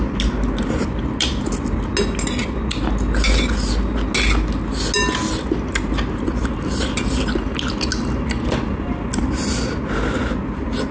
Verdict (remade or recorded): recorded